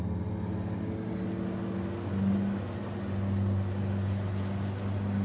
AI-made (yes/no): no